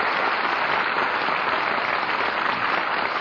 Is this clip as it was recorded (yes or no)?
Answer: yes